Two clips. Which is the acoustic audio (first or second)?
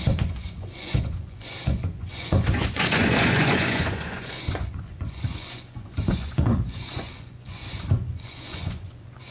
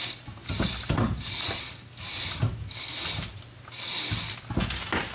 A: second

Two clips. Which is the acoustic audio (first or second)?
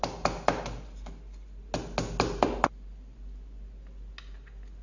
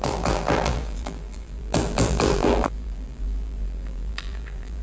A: first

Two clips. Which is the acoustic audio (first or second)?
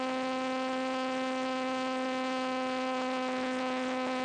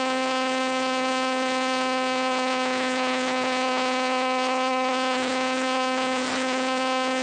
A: first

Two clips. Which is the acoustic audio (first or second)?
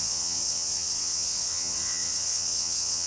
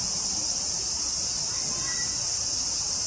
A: second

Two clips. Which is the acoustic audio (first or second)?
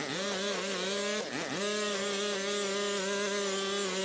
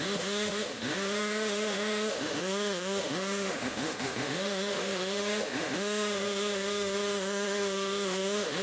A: first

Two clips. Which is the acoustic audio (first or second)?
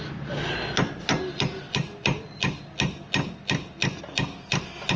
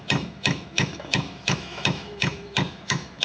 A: first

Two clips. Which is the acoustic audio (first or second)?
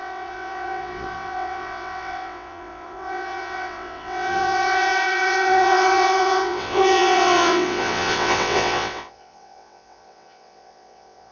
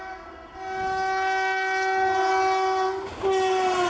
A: second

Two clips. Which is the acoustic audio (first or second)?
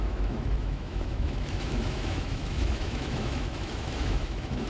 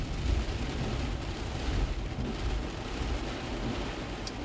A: second